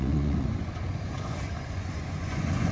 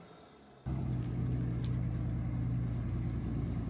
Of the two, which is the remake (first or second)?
first